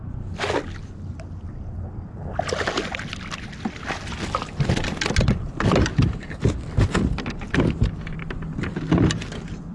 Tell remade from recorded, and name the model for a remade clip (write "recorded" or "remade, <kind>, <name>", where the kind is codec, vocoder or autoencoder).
recorded